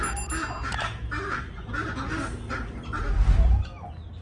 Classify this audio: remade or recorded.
recorded